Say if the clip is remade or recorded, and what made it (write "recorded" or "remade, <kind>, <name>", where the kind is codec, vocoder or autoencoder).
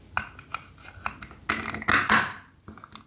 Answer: recorded